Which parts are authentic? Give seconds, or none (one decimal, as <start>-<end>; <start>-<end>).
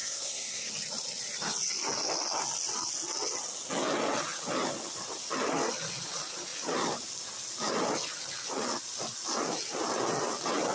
0.7-10.7